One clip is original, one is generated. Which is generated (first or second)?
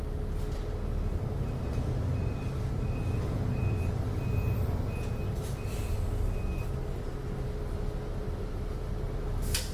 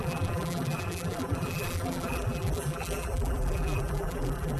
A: second